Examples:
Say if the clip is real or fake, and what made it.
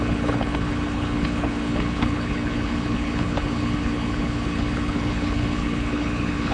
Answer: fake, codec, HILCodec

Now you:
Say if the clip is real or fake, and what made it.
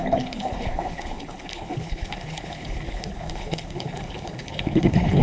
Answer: fake, codec, HILCodec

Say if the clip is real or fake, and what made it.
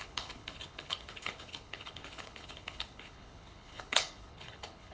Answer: fake, codec, HILCodec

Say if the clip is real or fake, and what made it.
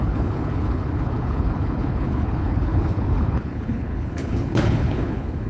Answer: fake, codec, HILCodec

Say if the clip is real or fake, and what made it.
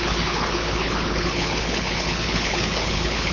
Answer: fake, codec, HILCodec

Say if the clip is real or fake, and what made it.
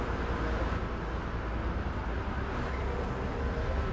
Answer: real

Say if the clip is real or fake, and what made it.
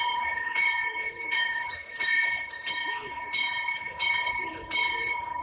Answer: fake, codec, HILCodec